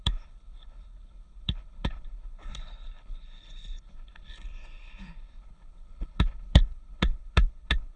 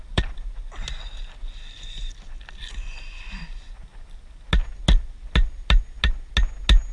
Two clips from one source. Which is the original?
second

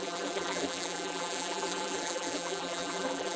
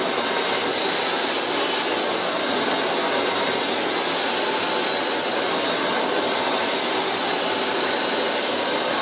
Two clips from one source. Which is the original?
second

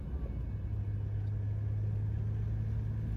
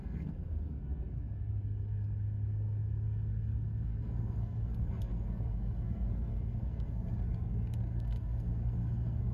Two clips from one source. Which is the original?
first